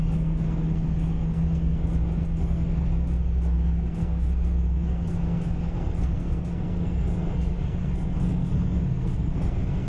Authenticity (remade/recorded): remade